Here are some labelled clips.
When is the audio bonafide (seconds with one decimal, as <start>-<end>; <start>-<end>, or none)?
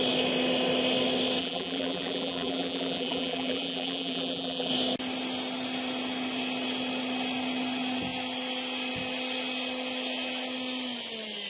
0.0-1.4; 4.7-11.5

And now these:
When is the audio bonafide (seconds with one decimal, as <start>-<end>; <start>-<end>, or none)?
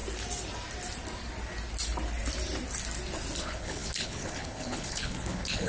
0.0-3.4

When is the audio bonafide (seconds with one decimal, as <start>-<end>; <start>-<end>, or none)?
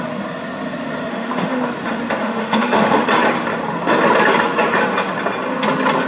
0.0-1.1; 1.6-2.2; 3.0-6.1